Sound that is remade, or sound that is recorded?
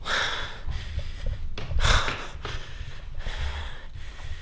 recorded